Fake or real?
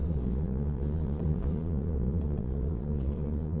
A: fake